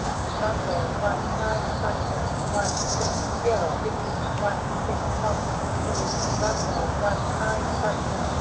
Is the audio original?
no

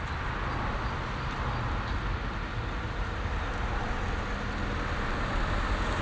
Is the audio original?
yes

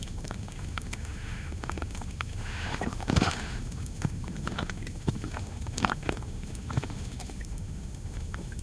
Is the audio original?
no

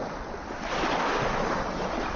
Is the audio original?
yes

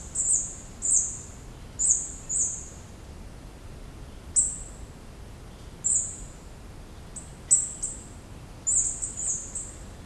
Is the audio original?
yes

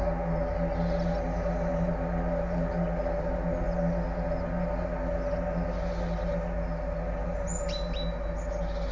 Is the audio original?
yes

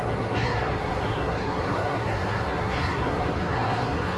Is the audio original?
no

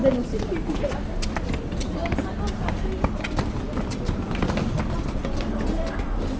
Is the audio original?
yes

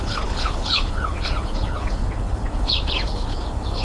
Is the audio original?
no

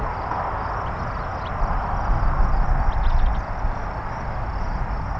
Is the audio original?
yes